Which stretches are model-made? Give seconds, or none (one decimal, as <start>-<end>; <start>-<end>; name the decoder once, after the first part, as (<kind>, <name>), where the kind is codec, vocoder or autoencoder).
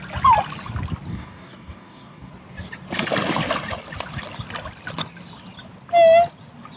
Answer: 1.1-2.3 (codec, DAC)